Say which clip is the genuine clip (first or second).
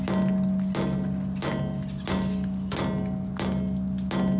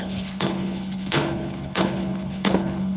first